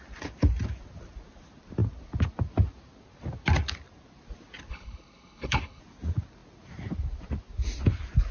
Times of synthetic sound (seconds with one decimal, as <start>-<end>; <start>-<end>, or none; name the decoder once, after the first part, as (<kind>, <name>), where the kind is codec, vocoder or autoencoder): 4.7-5.8 (codec, HILCodec)